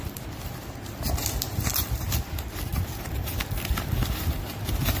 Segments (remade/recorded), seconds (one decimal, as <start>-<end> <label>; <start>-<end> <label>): 0.0-2.7 recorded; 2.7-4.4 remade; 4.4-5.0 recorded